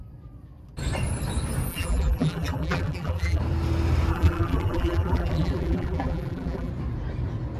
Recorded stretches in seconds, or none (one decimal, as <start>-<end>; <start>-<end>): 0.0-1.7; 3.4-4.1; 6.7-7.6